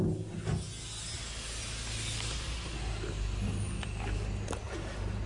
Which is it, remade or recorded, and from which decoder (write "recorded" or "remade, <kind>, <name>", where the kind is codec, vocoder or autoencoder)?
recorded